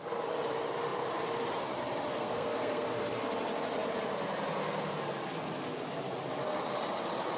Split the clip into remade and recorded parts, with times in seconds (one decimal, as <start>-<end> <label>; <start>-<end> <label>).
0.0-2.1 recorded; 2.1-3.3 remade; 3.3-7.4 recorded